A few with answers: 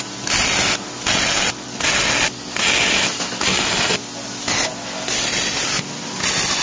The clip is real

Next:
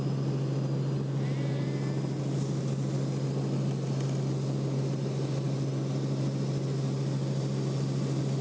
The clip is real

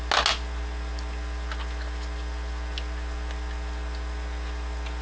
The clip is real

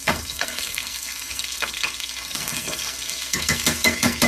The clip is fake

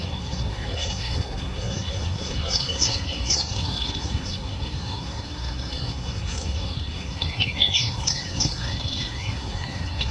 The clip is fake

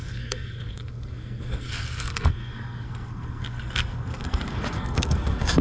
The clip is fake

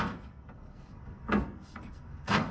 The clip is fake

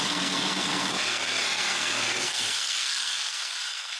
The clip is fake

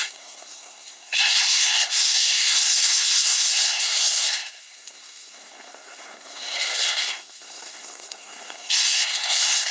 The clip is fake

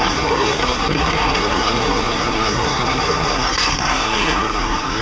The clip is fake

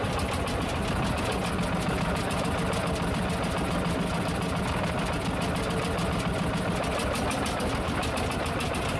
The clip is real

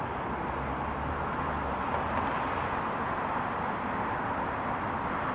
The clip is real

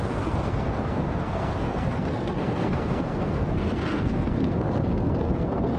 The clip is fake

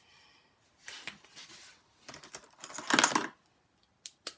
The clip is real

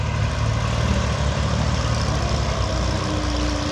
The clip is real